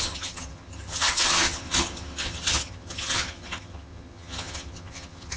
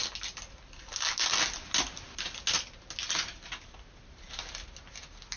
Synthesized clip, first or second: first